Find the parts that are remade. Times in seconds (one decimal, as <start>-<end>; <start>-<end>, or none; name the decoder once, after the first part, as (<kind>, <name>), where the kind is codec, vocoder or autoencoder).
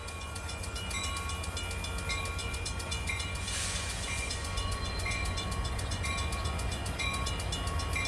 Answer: 0.0-1.1 (vocoder, Vocos); 2.4-7.3